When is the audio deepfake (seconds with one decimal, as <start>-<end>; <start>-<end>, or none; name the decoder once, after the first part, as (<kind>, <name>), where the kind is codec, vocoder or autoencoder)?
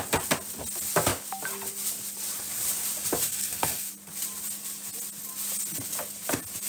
3.3-3.9 (codec, SNAC)